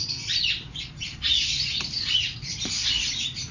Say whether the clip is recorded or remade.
recorded